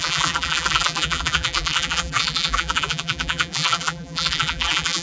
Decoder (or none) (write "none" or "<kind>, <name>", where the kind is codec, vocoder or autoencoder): vocoder, BigVGAN v2